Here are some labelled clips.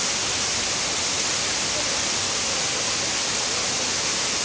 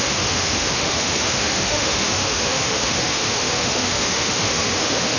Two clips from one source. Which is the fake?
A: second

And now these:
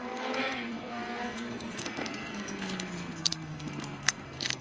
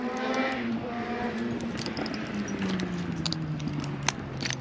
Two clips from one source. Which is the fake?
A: first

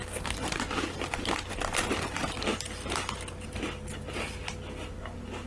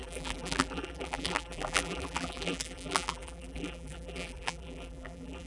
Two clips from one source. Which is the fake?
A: second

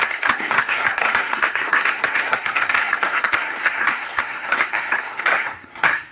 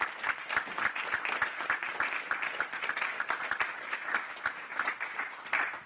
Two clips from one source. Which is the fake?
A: first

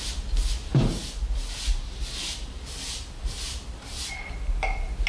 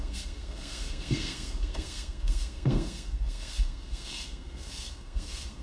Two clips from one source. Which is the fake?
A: second